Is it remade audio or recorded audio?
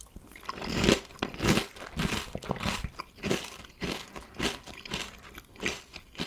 recorded